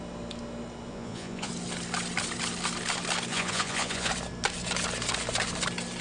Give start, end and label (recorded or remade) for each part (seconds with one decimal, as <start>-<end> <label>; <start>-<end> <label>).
0.0-0.9 recorded; 0.9-1.5 remade; 1.5-3.3 recorded; 3.3-4.1 remade; 4.1-6.0 recorded